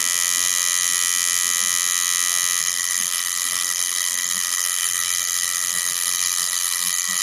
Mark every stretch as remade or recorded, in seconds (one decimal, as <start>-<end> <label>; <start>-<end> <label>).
0.0-2.6 recorded; 2.6-7.2 remade